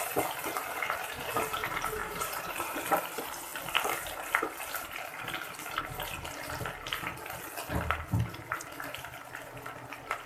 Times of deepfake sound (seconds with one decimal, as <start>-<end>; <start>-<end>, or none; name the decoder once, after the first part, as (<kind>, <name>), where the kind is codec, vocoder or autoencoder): 2.0-2.8 (vocoder, BigVGAN v2)